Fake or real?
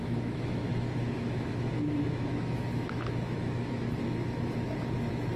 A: fake